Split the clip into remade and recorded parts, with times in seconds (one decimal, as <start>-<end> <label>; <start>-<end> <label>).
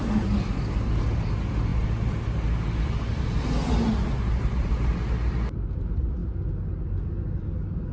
0.0-7.9 recorded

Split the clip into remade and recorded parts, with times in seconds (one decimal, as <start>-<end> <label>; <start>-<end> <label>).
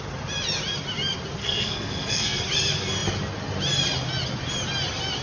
0.0-1.4 recorded; 1.4-2.4 remade; 2.4-5.2 recorded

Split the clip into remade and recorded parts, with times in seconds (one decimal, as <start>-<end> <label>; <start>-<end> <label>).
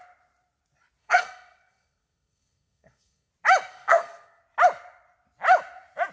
0.0-1.0 recorded; 1.0-3.3 remade; 3.3-3.7 recorded; 3.7-4.4 remade; 4.4-6.1 recorded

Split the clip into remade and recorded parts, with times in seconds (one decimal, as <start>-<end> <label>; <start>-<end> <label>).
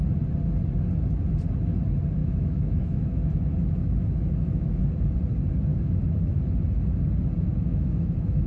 0.0-2.2 recorded; 2.2-4.8 remade; 4.8-5.7 recorded; 5.7-6.5 remade; 6.5-7.5 recorded; 7.5-8.5 remade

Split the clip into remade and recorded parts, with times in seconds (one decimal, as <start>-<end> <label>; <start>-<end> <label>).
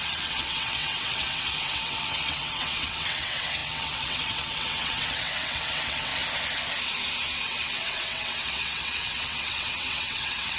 0.0-6.1 remade; 6.1-7.4 recorded; 7.4-10.6 remade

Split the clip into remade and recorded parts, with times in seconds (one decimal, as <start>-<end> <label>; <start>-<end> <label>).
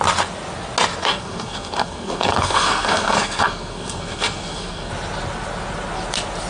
0.0-1.0 recorded; 1.0-4.9 remade; 4.9-6.5 recorded